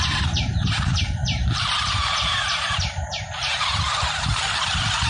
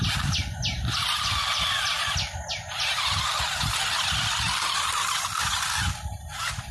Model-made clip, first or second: first